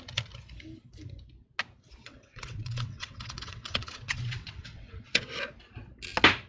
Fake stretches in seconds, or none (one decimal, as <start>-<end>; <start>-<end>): 2.0-5.3